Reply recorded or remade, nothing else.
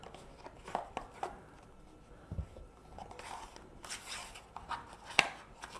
recorded